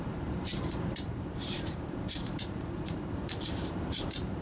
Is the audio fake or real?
fake